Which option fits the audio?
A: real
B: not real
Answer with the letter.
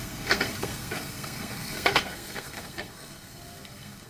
B